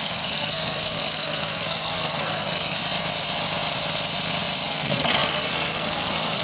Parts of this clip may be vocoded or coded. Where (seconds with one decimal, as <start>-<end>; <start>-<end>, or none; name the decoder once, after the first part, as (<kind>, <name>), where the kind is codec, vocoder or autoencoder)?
0.0-2.8 (codec, SNAC); 4.7-6.4